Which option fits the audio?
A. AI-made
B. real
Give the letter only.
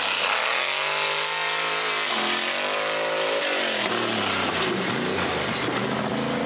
B